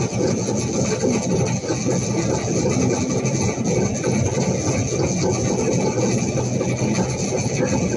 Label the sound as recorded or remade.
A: recorded